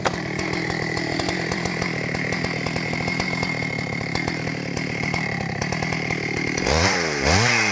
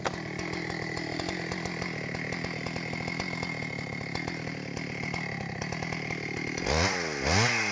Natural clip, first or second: second